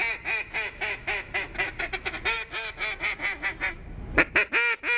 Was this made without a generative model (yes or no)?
yes